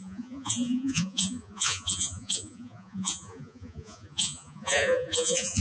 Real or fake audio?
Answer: fake